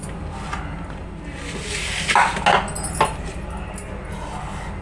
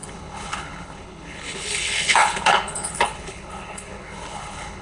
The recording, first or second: first